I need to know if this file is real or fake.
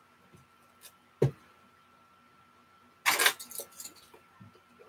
real